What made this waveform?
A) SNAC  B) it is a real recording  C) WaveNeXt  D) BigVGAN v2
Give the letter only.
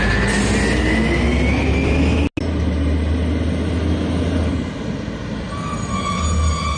B